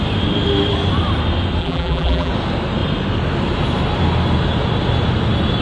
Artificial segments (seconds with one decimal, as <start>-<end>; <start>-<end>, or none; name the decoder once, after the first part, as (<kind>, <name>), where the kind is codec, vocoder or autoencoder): 1.6-2.3 (vocoder, BigVGAN v2)

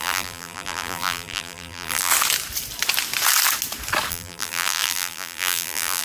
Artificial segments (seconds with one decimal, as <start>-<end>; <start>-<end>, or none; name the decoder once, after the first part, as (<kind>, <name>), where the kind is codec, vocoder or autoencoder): 0.0-2.1 (vocoder, BigVGAN v2); 4.1-6.0

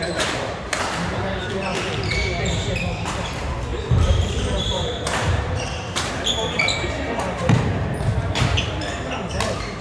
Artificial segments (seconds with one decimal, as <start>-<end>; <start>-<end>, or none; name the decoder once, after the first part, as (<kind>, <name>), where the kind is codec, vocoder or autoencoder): 0.0-1.7 (vocoder, BigVGAN v2); 2.4-9.8

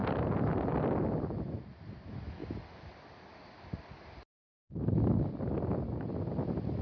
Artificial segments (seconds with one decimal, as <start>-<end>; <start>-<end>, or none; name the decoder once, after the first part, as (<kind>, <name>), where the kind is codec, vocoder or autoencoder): none

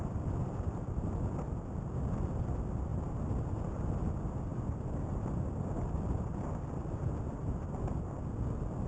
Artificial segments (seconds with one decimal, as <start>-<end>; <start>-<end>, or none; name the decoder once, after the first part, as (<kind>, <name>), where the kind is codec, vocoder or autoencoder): none